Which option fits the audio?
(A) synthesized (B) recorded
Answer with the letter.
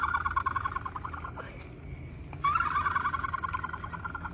B